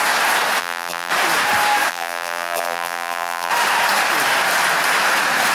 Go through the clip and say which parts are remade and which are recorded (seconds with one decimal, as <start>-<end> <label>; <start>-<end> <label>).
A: 0.0-0.6 recorded; 0.6-1.1 remade; 1.1-1.9 recorded; 1.9-3.5 remade; 3.5-5.5 recorded